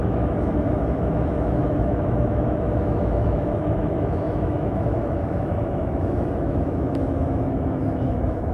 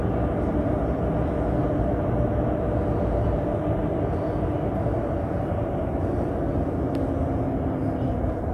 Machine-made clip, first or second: first